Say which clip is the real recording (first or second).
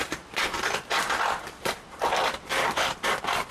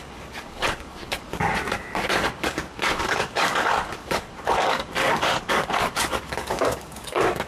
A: first